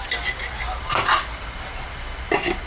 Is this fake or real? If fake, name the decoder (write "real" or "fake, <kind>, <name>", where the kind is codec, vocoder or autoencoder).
fake, vocoder, BigVGAN v2